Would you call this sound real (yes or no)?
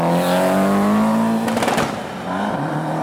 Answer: yes